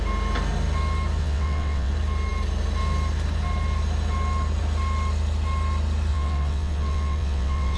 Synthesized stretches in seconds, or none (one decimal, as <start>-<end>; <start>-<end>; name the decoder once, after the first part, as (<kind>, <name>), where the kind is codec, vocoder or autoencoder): 1.2-1.9 (vocoder, WaveNeXt); 6.1-7.8